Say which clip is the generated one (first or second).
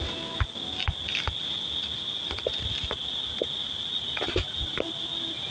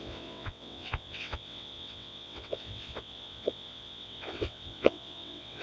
second